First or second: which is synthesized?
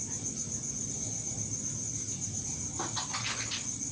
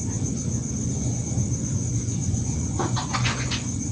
second